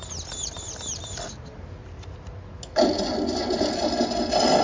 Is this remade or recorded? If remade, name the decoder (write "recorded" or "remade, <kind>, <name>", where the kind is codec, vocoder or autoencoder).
recorded